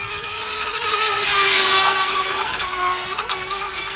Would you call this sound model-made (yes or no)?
yes